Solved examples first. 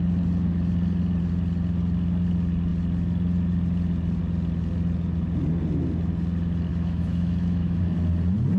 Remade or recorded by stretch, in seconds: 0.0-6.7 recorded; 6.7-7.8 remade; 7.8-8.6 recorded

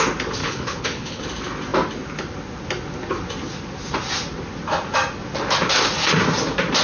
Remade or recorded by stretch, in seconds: 0.0-0.4 recorded; 0.4-1.2 remade; 1.2-6.8 recorded

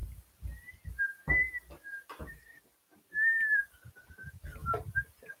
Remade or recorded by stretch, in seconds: 0.0-1.9 recorded; 1.9-3.6 remade; 3.6-5.4 recorded

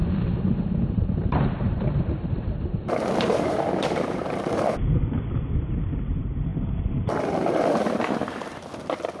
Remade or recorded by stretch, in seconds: 0.0-4.6 remade; 4.6-9.2 recorded

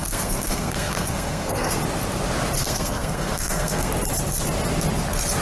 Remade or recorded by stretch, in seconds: 0.0-1.8 remade; 1.8-2.6 recorded; 2.6-3.9 remade; 3.9-5.4 recorded

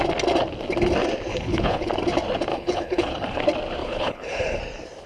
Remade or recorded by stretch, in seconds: 0.0-1.3 recorded; 1.3-1.9 remade; 1.9-2.5 recorded; 2.5-3.4 remade; 3.4-3.8 recorded; 3.8-4.6 remade; 4.6-5.1 recorded

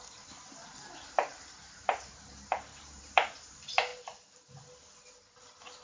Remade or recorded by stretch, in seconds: 0.0-1.3 recorded; 1.3-3.5 remade; 3.5-5.8 recorded

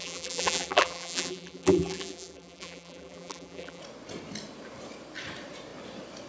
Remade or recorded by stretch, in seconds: 0.0-3.8 remade; 3.8-6.3 recorded